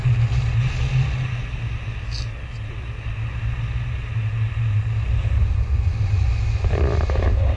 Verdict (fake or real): real